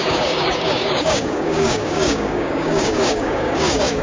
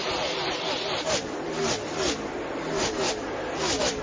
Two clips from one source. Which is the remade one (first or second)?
first